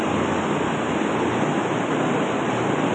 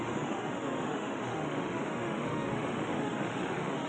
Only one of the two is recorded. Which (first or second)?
first